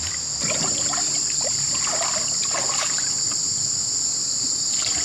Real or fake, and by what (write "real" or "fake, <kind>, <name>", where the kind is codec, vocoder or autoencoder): real